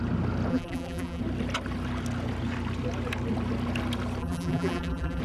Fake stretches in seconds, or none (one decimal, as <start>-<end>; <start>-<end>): 0.5-1.2; 4.2-5.2